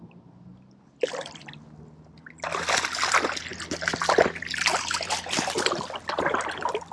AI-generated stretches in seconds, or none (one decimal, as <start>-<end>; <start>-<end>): none